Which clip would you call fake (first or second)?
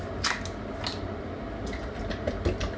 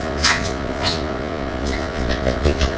second